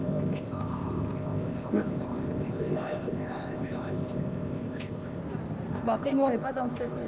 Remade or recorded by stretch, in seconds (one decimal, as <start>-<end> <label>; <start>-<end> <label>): 0.0-5.2 remade; 5.2-5.7 recorded; 5.7-7.1 remade